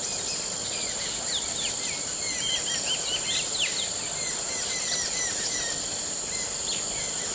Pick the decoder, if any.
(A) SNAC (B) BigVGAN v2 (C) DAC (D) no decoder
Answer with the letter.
D